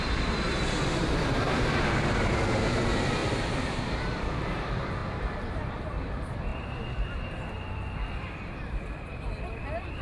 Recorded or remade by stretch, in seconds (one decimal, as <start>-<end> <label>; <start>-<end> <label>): 0.0-5.0 remade; 5.0-5.5 recorded; 5.5-10.0 remade